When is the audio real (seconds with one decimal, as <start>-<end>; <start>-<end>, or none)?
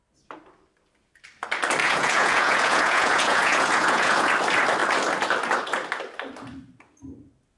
0.0-1.8; 4.3-7.6